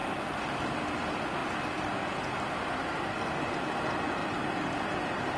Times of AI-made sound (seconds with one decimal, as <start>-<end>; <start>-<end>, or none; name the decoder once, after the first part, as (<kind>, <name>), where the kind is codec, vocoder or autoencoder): 0.0-0.6 (vocoder, BigVGAN v2); 1.4-2.8; 4.2-4.9